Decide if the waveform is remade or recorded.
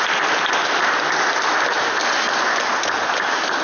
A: recorded